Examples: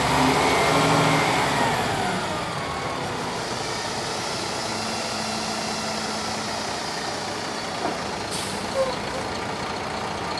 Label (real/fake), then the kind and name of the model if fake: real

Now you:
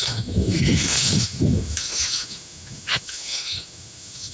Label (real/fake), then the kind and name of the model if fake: fake, autoencoder, DAC-VAE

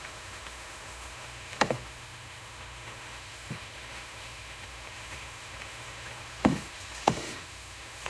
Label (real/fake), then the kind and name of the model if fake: fake, autoencoder, DAC-VAE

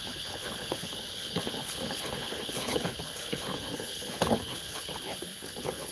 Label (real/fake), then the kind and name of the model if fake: fake, codec, HILCodec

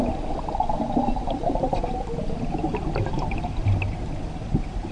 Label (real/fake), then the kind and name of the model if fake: fake, vocoder, BigVGAN v2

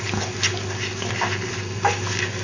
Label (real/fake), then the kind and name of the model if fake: real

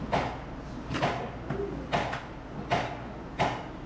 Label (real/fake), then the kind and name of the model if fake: real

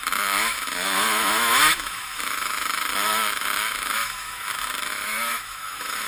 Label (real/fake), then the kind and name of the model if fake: fake, autoencoder, DAC-VAE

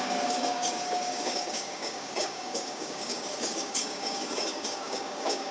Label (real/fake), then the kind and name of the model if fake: fake, codec, DAC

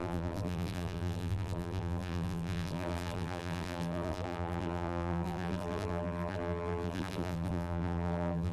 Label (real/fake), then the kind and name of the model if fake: fake, vocoder, BigVGAN v2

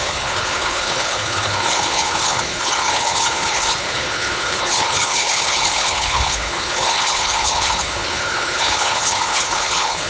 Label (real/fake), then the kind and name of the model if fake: fake, codec, HILCodec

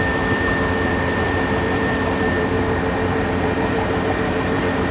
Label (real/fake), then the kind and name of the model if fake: fake, vocoder, BigVGAN v2